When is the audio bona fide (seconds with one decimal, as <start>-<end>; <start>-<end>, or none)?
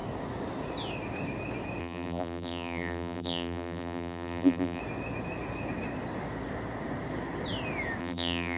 0.0-1.8; 4.8-8.0